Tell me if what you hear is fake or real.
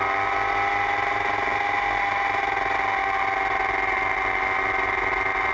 real